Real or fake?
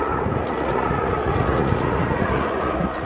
fake